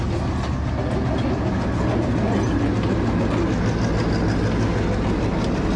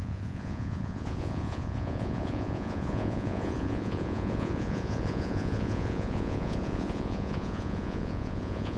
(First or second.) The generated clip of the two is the second